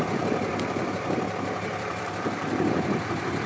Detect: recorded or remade remade